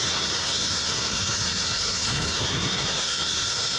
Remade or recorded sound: remade